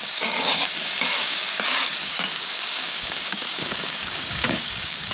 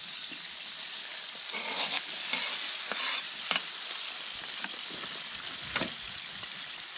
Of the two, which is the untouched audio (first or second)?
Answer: second